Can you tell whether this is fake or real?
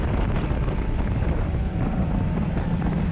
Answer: fake